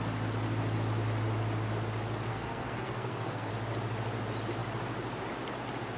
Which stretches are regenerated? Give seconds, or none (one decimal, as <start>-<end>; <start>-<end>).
2.3-3.5